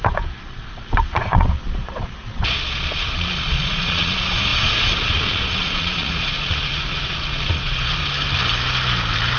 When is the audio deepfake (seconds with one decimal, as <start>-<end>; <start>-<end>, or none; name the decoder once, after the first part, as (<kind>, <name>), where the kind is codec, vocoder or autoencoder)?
0.0-8.0 (vocoder, Vocos)